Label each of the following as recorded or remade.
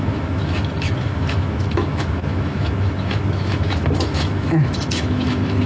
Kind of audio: remade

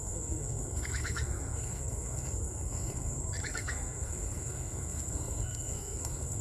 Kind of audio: remade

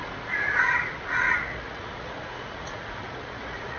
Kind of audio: remade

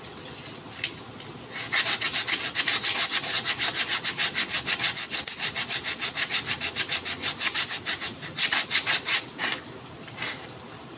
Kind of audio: recorded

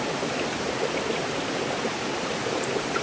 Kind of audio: remade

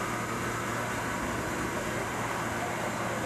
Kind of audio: recorded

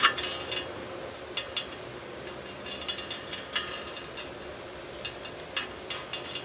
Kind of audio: recorded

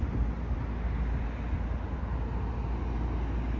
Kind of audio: recorded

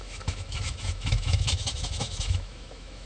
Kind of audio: remade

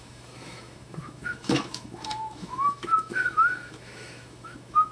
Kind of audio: remade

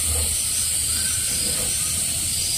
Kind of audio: recorded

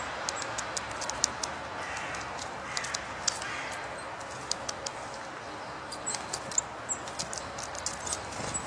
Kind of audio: recorded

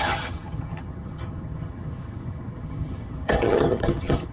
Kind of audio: remade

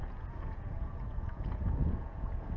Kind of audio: remade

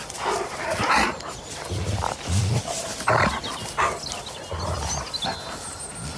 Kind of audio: recorded